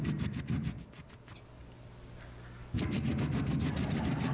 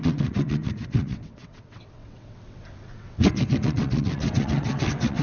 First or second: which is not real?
second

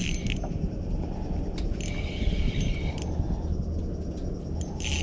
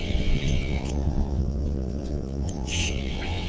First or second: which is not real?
second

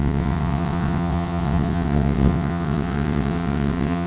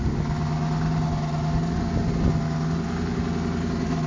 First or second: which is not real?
first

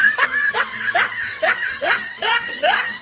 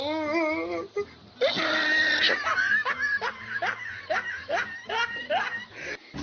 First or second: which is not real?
first